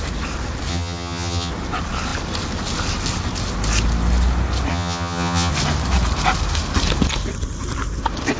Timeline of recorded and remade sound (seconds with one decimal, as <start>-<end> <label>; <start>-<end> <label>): 0.0-0.7 recorded; 0.7-1.5 remade; 1.5-4.7 recorded; 4.7-5.5 remade; 5.5-8.4 recorded